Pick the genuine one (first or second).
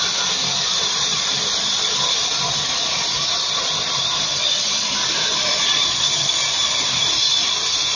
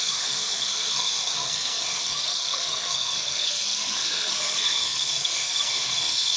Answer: first